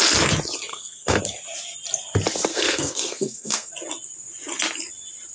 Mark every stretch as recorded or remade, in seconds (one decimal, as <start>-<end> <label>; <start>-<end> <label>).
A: 0.0-0.7 recorded; 0.7-1.2 remade; 1.2-2.5 recorded; 2.5-3.7 remade; 3.7-5.3 recorded